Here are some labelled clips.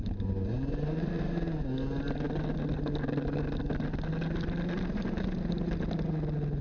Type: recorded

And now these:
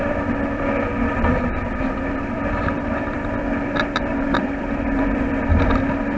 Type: remade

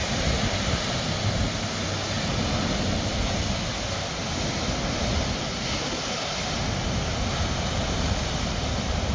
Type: recorded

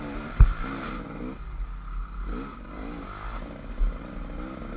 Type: recorded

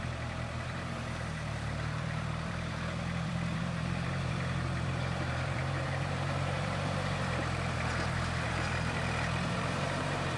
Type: remade